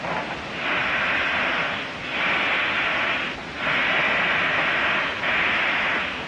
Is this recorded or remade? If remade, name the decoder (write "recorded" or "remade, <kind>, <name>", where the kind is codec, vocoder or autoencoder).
recorded